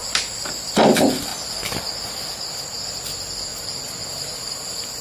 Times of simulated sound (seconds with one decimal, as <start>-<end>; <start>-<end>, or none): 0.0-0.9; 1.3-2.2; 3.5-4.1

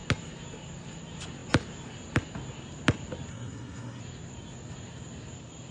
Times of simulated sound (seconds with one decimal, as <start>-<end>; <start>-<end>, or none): 3.3-4.0

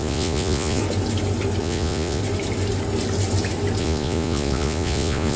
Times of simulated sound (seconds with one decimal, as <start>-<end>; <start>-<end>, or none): 0.0-0.8; 1.6-2.2; 3.8-5.4

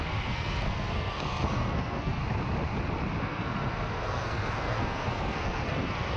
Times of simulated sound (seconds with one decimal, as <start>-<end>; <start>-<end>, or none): 0.0-2.2; 3.2-6.2

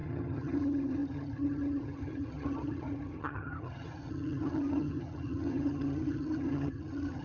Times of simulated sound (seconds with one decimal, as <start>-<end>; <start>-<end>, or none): 0.0-7.2

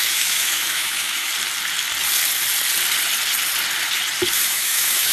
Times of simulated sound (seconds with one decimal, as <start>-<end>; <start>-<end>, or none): 0.0-1.3; 4.3-5.1